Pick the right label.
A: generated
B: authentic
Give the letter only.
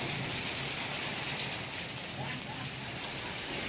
B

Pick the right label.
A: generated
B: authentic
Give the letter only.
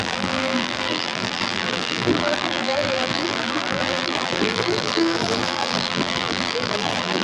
A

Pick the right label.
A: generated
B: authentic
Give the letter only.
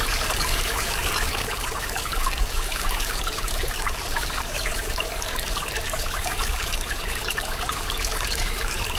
A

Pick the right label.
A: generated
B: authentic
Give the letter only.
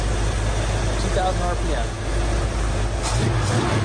B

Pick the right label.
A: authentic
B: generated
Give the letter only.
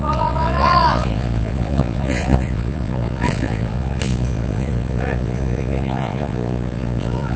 B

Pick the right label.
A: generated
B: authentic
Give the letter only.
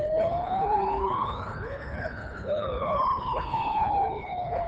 A